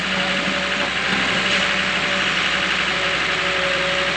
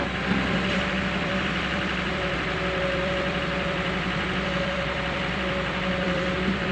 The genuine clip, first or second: first